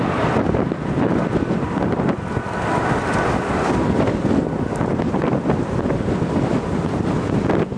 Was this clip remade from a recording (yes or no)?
no